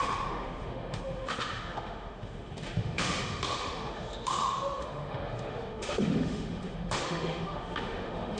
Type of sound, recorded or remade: remade